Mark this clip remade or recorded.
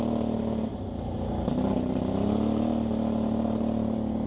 recorded